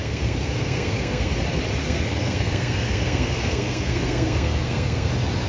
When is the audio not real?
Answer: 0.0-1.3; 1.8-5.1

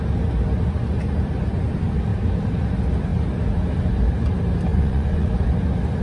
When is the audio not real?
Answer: 4.7-5.3

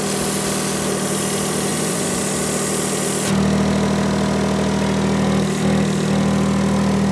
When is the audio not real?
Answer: 1.7-2.2

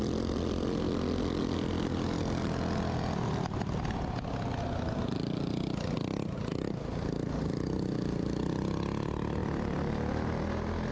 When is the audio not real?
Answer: none